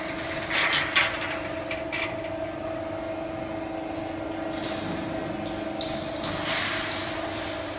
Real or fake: real